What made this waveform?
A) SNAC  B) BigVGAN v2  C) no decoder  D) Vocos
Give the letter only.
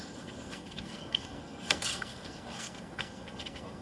A